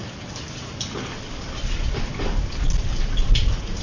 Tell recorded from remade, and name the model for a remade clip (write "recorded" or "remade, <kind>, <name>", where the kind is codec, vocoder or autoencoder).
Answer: recorded